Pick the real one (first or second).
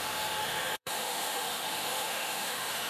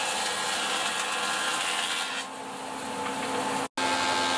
second